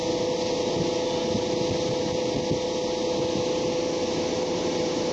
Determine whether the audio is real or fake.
real